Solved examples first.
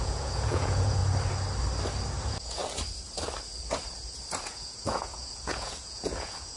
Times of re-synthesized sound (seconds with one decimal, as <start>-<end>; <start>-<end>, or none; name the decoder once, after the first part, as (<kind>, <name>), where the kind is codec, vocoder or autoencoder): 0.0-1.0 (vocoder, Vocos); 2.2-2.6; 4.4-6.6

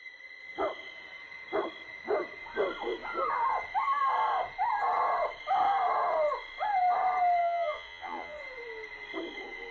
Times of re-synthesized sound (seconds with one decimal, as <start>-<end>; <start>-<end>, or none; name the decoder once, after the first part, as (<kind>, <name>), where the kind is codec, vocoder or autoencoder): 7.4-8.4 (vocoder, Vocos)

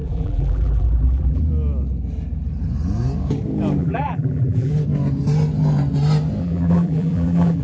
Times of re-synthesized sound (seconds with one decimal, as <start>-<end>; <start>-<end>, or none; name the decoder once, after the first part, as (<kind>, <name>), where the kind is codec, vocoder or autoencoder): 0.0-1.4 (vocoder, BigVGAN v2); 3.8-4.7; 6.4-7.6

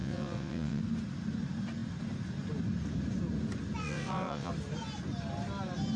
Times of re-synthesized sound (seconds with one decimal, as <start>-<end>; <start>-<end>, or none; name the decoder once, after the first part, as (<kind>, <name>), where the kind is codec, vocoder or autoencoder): 0.0-0.8 (vocoder, WaveNeXt); 3.8-4.5